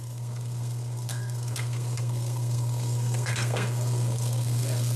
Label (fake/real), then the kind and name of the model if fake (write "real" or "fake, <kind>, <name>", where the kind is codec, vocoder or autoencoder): fake, codec, SNAC